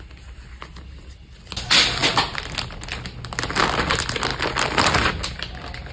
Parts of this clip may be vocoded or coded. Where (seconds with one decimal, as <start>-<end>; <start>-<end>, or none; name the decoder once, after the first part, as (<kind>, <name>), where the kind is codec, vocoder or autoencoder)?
none